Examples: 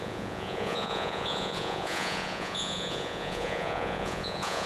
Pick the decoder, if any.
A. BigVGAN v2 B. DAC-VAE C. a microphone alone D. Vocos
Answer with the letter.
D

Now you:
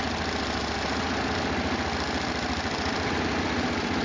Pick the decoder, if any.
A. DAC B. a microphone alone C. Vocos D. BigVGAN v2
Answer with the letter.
B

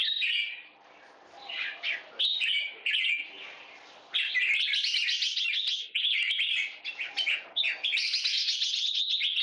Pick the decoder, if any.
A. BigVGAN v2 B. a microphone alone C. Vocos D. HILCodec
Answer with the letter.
B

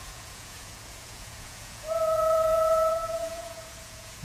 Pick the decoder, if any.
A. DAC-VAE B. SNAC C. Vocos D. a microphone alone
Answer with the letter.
C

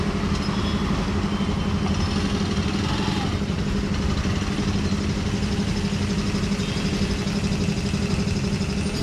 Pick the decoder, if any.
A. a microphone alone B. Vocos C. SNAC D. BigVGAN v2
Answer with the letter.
A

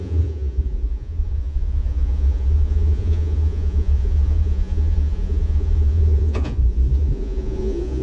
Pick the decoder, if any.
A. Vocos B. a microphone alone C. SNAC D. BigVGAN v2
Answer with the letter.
A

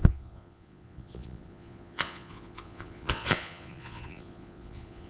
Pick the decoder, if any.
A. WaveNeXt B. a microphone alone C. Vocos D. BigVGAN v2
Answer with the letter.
C